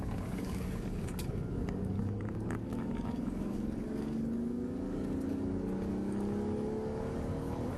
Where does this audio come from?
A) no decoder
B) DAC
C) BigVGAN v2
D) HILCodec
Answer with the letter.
B